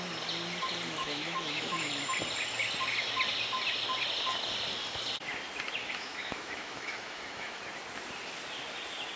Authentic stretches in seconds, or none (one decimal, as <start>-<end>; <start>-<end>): 0.0-1.0; 1.9-5.8; 7.6-9.2